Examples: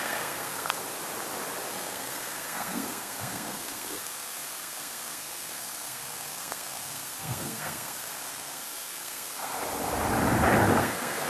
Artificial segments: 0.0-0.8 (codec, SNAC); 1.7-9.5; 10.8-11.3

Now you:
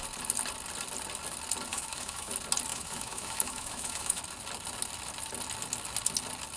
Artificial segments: 1.7-2.3 (autoencoder, DAC-VAE); 2.7-4.2

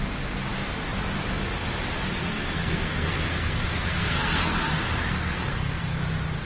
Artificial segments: 2.2-6.0 (codec, SNAC)

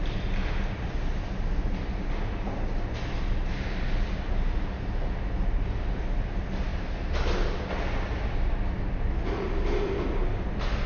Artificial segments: none

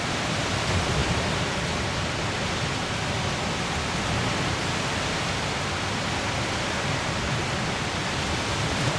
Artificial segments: none